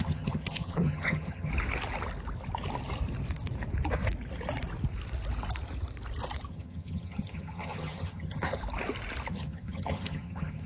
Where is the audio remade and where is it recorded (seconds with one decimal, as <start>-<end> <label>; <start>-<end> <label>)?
0.0-1.5 remade; 1.5-6.5 recorded; 6.5-8.6 remade; 8.6-9.3 recorded; 9.3-10.7 remade

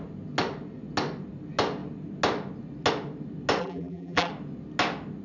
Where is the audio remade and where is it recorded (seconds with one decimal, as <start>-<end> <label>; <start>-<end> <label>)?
0.0-3.6 recorded; 3.6-4.3 remade; 4.3-5.2 recorded

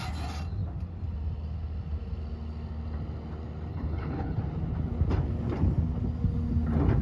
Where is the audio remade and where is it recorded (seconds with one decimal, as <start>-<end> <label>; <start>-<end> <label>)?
0.0-3.7 recorded; 3.7-4.4 remade; 4.4-7.0 recorded

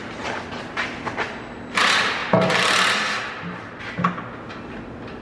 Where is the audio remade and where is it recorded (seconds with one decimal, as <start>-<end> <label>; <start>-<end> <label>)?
0.0-5.2 recorded